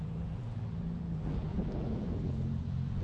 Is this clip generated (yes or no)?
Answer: yes